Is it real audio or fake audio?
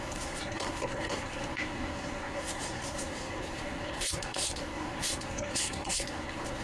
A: fake